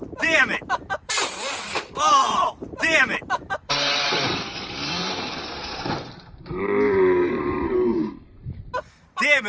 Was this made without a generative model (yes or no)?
no